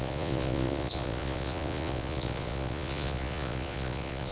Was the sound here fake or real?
fake